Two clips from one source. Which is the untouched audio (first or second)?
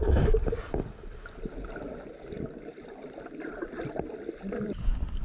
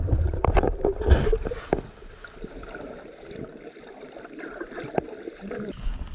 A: first